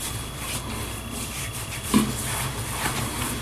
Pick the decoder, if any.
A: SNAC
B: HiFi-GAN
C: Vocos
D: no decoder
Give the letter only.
D